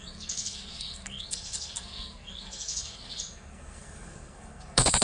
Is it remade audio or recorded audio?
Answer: remade